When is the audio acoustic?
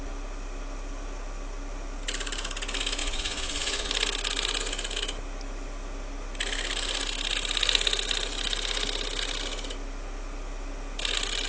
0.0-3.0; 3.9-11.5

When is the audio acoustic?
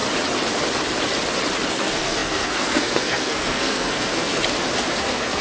0.0-1.7; 4.4-4.9